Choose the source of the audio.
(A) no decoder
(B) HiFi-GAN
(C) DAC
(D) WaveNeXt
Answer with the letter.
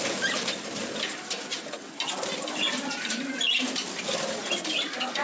A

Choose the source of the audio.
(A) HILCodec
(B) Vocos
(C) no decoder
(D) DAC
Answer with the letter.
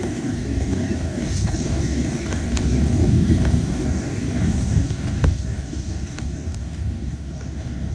D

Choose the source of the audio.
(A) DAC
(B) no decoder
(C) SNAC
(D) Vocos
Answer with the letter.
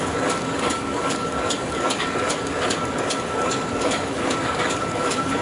A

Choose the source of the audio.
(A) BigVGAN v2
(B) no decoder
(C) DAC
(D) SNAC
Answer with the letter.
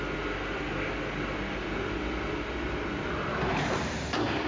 B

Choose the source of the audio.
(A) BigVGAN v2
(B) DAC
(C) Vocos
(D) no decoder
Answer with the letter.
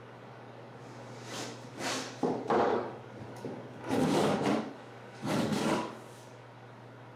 B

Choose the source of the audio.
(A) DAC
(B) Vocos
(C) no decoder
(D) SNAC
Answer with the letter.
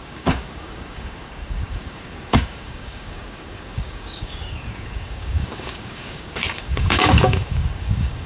A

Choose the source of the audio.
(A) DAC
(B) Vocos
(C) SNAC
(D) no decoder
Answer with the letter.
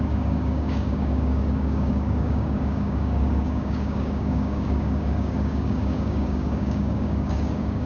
A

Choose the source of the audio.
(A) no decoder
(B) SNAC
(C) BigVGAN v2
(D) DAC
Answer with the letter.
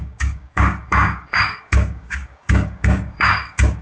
D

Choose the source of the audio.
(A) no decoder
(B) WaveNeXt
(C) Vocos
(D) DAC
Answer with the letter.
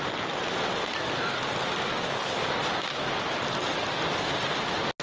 A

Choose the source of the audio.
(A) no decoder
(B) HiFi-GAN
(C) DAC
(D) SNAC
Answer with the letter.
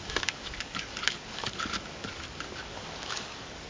C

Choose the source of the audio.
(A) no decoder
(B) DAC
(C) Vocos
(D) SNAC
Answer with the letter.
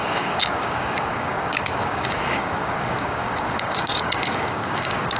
B